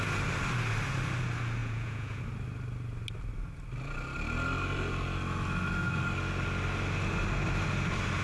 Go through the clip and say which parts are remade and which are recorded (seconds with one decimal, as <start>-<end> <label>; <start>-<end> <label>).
0.0-1.6 recorded; 1.6-2.2 remade; 2.2-8.2 recorded